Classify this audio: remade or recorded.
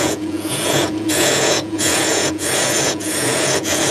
remade